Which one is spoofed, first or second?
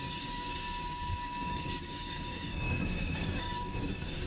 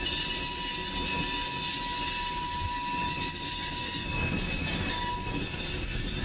first